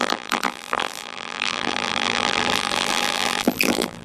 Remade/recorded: remade